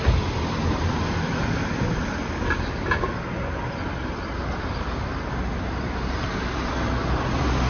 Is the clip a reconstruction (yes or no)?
no